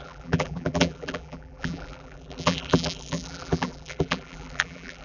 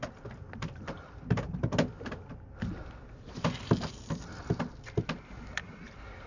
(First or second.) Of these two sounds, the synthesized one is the first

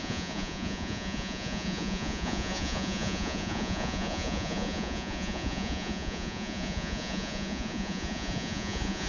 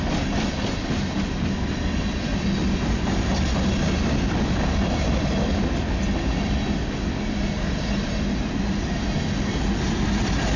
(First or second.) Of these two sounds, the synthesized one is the first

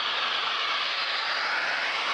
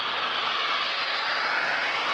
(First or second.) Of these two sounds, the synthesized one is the first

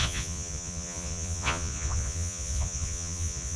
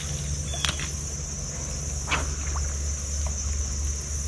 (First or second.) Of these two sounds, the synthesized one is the first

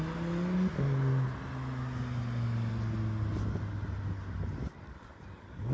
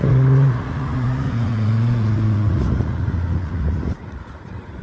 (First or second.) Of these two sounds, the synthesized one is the second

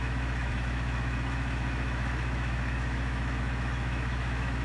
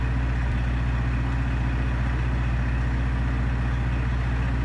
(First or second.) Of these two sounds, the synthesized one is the first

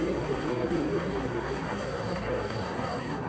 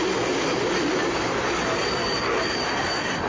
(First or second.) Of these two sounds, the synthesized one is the first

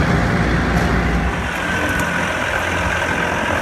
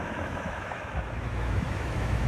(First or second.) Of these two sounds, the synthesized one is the second